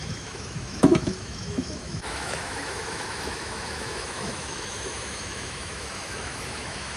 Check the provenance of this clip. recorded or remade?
remade